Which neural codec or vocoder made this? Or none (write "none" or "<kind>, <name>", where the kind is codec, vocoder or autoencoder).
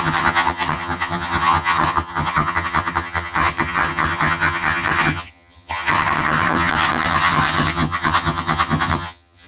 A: vocoder, HiFi-GAN